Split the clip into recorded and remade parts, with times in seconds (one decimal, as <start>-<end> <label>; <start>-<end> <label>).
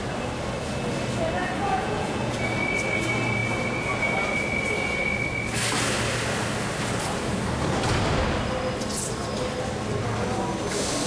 0.0-1.4 recorded; 1.4-2.4 remade; 2.4-11.1 recorded